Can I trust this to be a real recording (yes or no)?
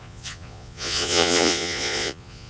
no